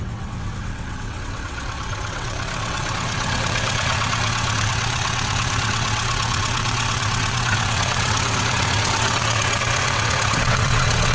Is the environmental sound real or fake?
fake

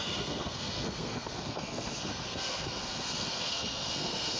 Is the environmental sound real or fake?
fake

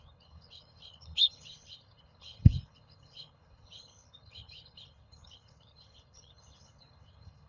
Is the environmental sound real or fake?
fake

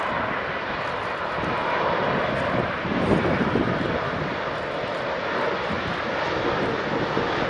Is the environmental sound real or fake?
real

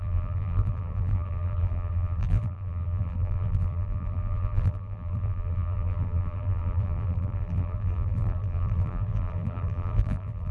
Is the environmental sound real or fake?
fake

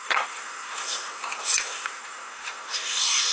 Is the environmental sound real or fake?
fake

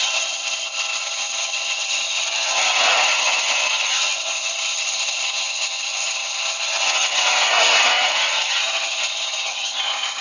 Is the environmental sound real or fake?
fake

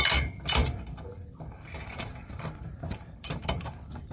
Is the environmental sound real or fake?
fake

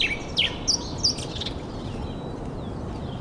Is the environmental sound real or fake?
real